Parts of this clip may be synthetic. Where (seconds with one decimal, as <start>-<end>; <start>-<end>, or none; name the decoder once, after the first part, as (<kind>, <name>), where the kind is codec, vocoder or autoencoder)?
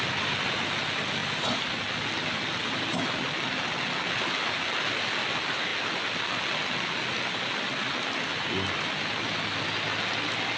none